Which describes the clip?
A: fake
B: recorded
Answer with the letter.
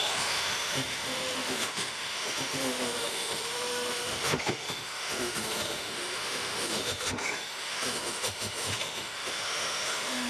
A